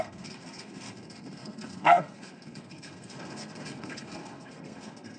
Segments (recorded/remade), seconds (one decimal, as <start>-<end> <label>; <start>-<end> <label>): 0.0-5.2 remade